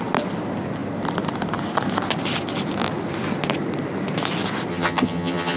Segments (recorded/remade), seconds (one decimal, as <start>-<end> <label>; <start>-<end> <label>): 0.0-4.7 recorded; 4.7-5.6 remade